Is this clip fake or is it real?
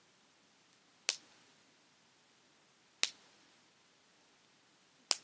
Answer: real